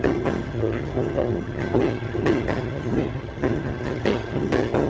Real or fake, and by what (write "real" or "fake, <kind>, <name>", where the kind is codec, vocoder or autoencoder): fake, vocoder, HiFi-GAN